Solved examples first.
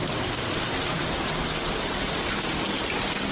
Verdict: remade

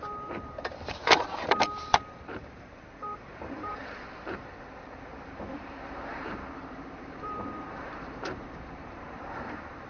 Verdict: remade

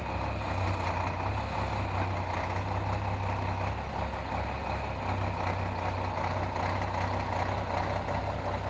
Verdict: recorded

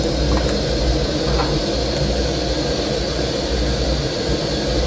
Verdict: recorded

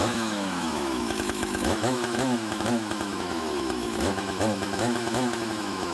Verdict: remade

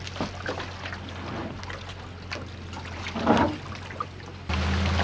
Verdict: recorded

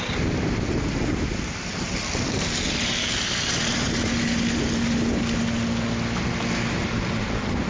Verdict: recorded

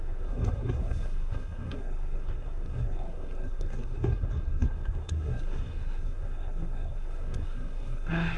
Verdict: remade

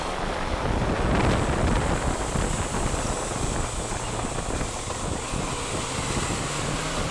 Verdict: recorded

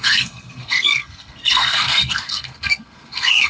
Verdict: remade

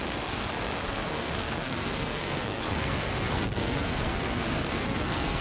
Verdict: remade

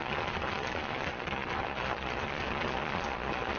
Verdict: remade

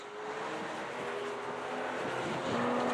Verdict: recorded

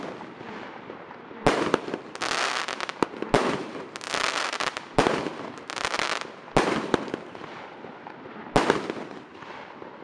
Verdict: recorded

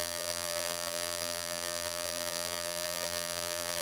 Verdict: remade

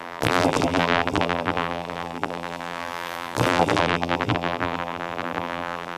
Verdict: remade